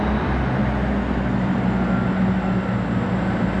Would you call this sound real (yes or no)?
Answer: yes